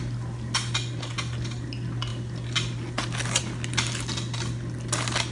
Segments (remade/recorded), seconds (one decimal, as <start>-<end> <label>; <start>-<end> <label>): 0.0-5.3 recorded